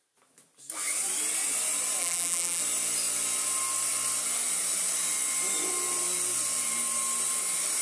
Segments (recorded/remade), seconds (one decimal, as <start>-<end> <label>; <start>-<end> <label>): 0.0-2.0 recorded; 2.0-2.6 remade; 2.6-7.8 recorded